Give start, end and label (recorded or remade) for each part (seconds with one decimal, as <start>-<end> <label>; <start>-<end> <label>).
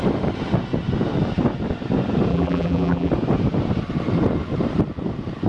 0.0-2.3 recorded; 2.3-3.1 remade; 3.1-5.5 recorded